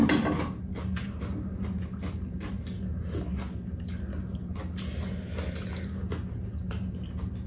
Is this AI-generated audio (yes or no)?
no